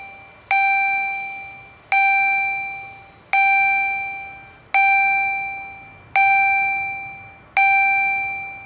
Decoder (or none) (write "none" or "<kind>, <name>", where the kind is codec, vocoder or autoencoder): none